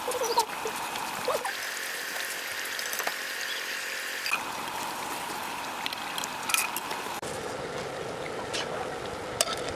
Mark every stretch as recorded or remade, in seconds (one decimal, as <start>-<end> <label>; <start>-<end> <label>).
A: 0.0-9.8 recorded